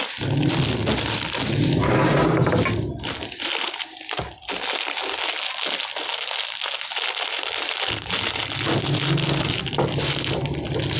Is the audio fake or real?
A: real